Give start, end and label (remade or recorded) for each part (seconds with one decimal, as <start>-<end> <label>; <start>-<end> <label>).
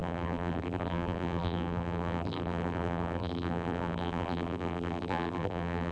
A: 0.0-5.9 remade